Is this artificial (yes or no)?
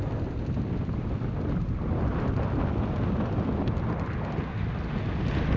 no